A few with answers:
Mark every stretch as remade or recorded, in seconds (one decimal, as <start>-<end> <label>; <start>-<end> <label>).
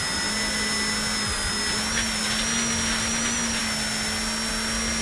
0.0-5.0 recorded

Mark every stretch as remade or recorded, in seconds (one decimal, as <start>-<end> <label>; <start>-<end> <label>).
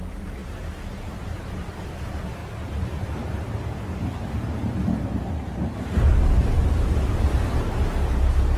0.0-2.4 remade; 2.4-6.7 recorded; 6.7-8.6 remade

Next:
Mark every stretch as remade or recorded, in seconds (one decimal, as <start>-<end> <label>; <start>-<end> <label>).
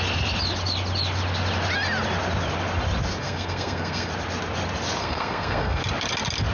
0.0-3.2 recorded; 3.2-4.1 remade; 4.1-5.0 recorded; 5.0-5.8 remade; 5.8-6.5 recorded